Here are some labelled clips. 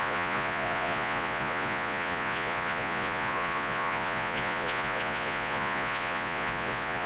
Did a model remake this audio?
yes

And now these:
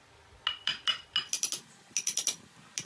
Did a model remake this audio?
no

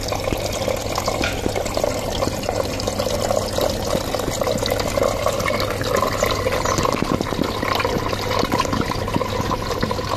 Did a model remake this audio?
no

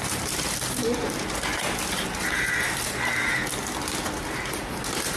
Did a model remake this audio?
no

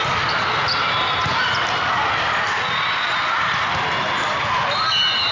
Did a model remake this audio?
no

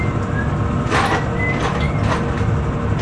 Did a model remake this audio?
no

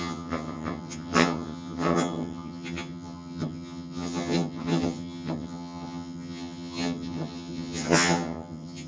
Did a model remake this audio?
yes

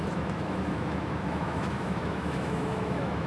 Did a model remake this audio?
yes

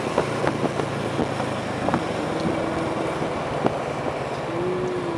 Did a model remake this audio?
no